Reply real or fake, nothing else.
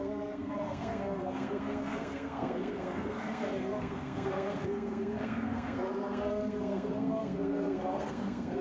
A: fake